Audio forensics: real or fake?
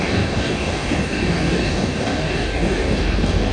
fake